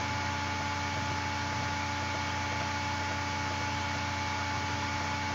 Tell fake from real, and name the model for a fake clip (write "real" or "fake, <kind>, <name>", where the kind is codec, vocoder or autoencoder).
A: real